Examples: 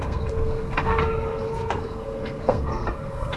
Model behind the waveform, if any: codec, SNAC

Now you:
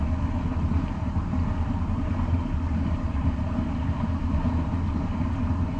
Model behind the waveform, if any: none